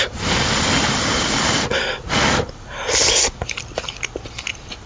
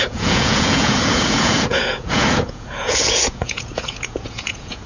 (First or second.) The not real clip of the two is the second